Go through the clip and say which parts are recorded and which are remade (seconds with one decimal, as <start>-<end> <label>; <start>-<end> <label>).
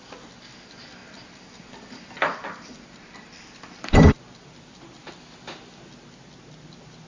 0.0-1.0 recorded; 1.0-5.1 remade; 5.1-7.1 recorded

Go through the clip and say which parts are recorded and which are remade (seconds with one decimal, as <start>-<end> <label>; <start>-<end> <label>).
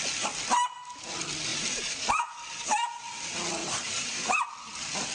0.0-1.5 recorded; 1.5-2.9 remade; 2.9-3.6 recorded; 3.6-4.5 remade; 4.5-5.1 recorded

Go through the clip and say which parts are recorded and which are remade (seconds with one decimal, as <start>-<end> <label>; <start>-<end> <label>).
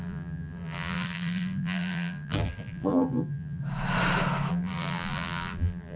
0.0-3.6 remade; 3.6-4.5 recorded; 4.5-6.0 remade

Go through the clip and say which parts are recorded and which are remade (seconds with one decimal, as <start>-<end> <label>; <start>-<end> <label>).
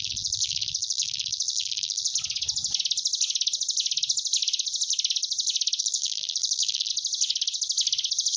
0.0-2.1 remade; 2.1-5.8 recorded; 5.8-6.9 remade; 6.9-8.4 recorded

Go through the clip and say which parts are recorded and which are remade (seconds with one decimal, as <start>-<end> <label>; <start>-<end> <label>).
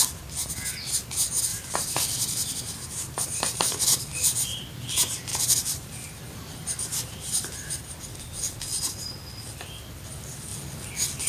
0.0-1.5 recorded; 1.5-3.6 remade; 3.6-5.3 recorded; 5.3-7.8 remade; 7.8-11.3 recorded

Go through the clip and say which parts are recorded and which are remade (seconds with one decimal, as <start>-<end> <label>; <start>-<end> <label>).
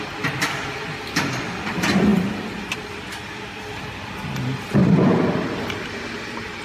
0.0-2.1 recorded; 2.1-3.6 remade; 3.6-4.8 recorded; 4.8-6.6 remade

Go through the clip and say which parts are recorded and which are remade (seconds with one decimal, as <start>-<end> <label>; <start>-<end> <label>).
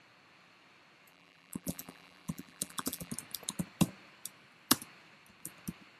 0.0-1.1 recorded; 1.1-3.1 remade; 3.1-6.0 recorded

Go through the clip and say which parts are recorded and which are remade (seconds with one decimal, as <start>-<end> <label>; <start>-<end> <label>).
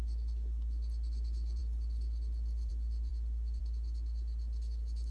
0.0-5.1 recorded